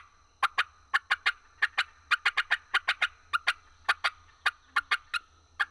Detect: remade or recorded recorded